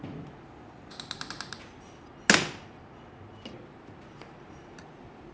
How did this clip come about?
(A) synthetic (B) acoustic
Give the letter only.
B